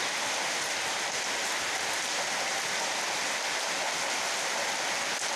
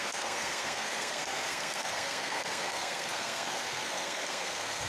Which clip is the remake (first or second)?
second